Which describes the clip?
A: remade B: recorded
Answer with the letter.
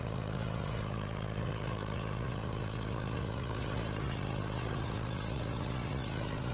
A